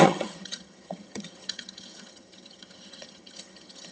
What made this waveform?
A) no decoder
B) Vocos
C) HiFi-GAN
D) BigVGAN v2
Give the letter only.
C